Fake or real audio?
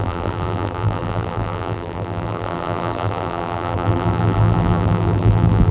fake